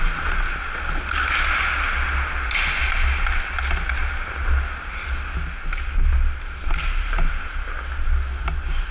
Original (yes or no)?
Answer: yes